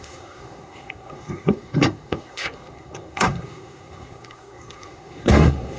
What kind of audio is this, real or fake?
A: fake